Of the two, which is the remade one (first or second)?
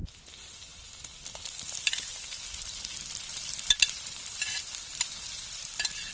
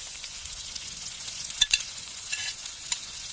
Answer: second